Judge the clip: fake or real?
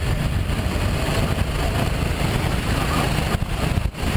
real